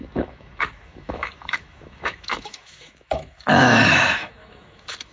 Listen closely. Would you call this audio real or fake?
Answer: fake